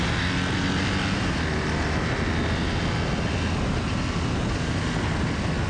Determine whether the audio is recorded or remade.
recorded